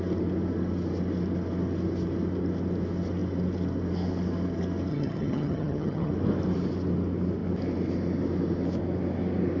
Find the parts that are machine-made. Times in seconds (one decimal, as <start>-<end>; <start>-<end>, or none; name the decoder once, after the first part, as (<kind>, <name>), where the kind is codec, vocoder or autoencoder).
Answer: 4.9-6.1 (vocoder, HiFi-GAN)